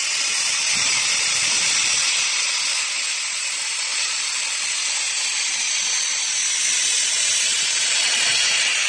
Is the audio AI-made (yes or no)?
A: no